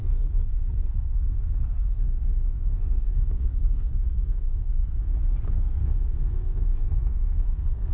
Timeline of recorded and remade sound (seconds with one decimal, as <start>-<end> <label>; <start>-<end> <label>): 0.0-4.8 remade; 4.8-5.4 recorded; 5.4-7.9 remade